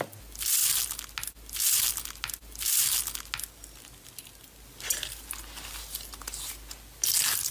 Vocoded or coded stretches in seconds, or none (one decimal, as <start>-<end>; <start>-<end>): none